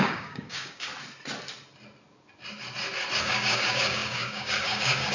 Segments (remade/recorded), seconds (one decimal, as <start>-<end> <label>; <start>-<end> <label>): 0.0-0.9 remade; 0.9-3.2 recorded; 3.2-5.1 remade